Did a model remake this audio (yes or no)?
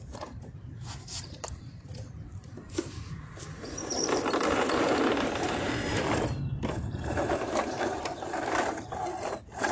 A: yes